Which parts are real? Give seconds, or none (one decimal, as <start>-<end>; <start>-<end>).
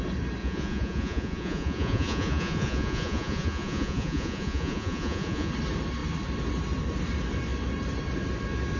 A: 0.0-0.4; 5.5-8.8